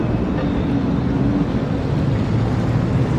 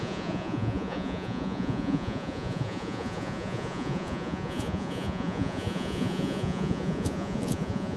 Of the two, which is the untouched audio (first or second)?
first